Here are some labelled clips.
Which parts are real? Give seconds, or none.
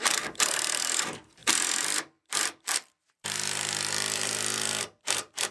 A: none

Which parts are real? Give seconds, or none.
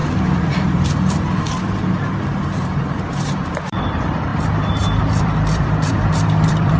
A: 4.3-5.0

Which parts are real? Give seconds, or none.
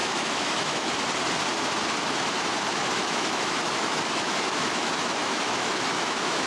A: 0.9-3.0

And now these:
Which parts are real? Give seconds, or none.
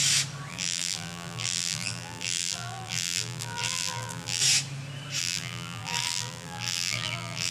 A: 0.0-0.5; 4.4-5.2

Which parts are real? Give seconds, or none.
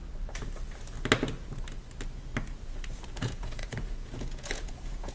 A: 0.0-3.1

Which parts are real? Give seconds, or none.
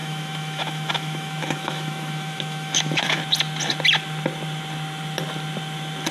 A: 3.2-6.1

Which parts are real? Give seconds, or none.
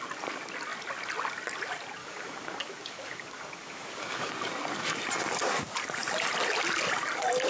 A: 0.0-2.0; 4.3-7.5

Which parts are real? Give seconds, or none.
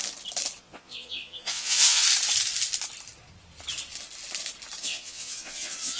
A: 0.0-0.6; 2.0-4.8